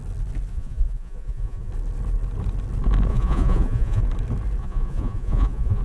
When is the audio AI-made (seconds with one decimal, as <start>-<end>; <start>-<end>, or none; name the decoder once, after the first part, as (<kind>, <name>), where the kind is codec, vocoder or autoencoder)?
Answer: 0.5-1.7 (vocoder, Vocos); 3.1-4.0; 4.6-5.8